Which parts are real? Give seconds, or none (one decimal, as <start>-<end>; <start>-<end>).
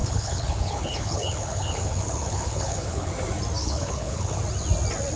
3.1-3.6; 4.4-5.2